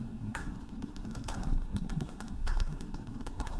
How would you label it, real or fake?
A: fake